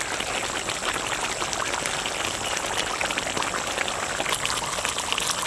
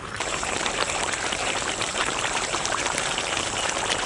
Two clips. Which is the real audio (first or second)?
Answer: first